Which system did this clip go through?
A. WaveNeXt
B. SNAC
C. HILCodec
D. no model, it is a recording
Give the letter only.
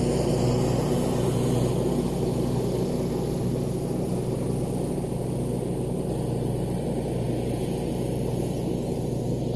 D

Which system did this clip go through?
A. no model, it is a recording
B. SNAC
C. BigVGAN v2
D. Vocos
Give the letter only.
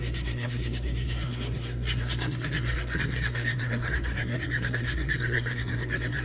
B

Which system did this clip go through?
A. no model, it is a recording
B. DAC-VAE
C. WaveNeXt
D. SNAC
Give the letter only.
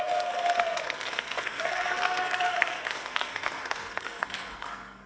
D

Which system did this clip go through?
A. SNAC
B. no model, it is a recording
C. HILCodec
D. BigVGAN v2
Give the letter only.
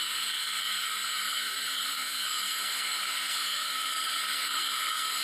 A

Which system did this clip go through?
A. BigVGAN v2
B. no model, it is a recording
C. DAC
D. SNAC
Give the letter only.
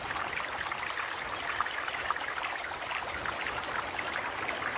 B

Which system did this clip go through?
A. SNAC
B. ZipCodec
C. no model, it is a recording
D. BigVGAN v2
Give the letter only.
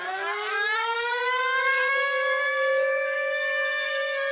A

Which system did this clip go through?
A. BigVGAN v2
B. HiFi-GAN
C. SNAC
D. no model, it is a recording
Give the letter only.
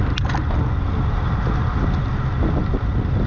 D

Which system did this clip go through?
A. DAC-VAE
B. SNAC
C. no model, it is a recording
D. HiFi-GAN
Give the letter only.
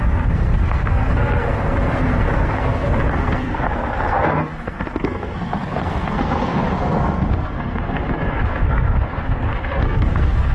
B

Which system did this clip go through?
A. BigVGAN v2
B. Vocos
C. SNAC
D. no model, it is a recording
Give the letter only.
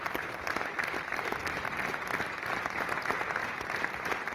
D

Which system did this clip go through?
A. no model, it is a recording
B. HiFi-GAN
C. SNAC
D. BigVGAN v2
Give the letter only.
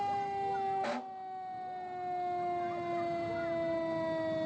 A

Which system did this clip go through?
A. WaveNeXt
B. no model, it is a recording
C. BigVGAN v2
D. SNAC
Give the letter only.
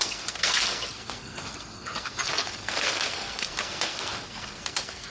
D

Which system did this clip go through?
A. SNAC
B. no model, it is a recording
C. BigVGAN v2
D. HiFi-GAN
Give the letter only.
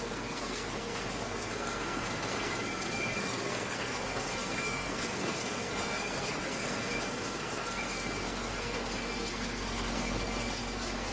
A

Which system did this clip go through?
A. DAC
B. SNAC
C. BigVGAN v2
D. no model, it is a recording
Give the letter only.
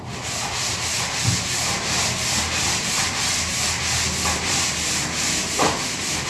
D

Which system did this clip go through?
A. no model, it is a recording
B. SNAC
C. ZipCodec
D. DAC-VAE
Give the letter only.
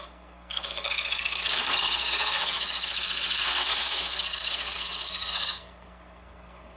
B